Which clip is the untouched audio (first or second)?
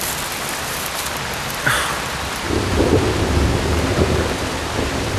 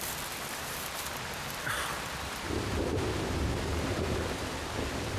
first